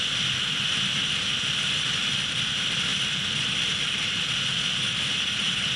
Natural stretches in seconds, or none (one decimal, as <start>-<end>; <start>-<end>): 0.0-5.8